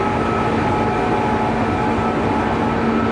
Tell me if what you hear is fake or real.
real